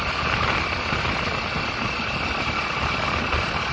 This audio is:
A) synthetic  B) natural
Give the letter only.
B